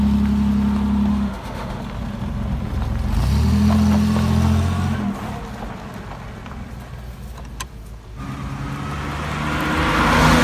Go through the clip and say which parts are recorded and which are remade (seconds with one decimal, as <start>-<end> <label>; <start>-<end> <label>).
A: 0.0-1.1 recorded; 1.1-1.8 remade; 1.8-10.4 recorded